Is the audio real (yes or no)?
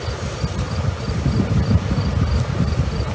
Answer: yes